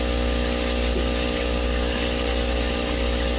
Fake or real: real